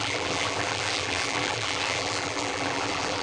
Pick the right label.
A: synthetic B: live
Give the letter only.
A